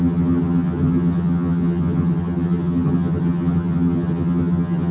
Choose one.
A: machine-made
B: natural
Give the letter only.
A